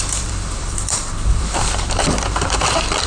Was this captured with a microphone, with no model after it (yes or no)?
no